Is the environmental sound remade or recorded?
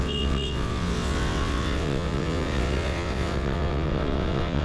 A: remade